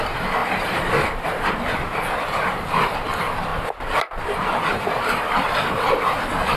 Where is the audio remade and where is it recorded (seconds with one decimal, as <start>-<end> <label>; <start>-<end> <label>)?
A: 0.0-0.4 recorded; 0.4-2.9 remade; 2.9-3.5 recorded; 3.5-4.3 remade; 4.3-6.6 recorded